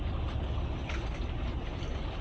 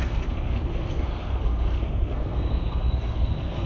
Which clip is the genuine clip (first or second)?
first